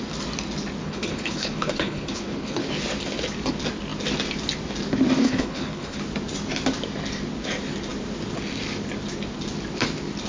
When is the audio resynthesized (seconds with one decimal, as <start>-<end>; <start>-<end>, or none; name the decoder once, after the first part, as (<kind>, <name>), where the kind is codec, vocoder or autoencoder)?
0.8-2.6 (codec, HILCodec); 5.2-6.0